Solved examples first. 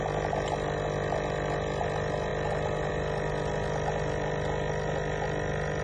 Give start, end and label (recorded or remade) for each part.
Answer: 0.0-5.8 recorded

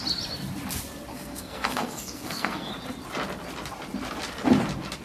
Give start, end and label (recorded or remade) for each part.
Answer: 0.0-1.1 recorded; 1.1-2.7 remade; 2.7-5.0 recorded

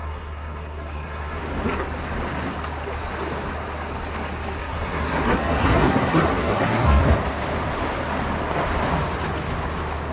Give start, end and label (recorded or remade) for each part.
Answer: 0.0-1.4 remade; 1.4-4.6 recorded; 4.6-7.0 remade; 7.0-10.1 recorded

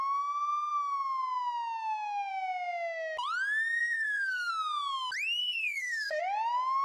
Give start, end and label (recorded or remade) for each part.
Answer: 0.0-3.8 recorded; 3.8-4.5 remade; 4.5-5.4 recorded; 5.4-6.2 remade; 6.2-6.8 recorded

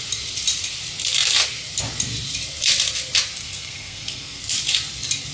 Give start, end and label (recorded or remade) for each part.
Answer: 0.0-3.4 recorded; 3.4-4.4 remade; 4.4-5.3 recorded

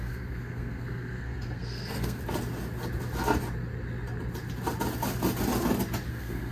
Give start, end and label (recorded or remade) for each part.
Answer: 0.0-2.2 remade; 2.2-6.1 recorded; 6.1-6.5 remade

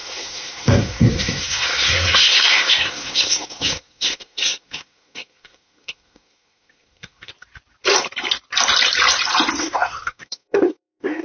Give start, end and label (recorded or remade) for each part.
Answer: 0.0-7.3 remade; 7.3-9.6 recorded; 9.6-11.2 remade